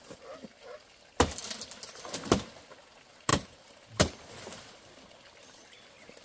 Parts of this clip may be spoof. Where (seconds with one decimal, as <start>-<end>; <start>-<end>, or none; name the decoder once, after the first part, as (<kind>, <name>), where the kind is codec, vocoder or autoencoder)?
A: none

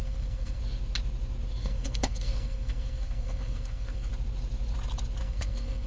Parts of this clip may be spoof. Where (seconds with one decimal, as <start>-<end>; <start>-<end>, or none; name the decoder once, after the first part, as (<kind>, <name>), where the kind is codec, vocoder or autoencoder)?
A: 0.0-0.6 (codec, SNAC); 1.6-4.1; 5.2-5.9